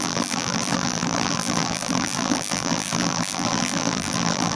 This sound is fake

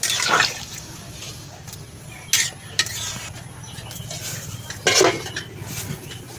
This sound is real